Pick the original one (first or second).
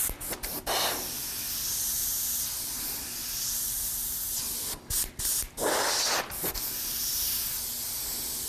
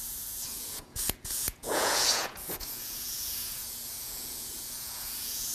first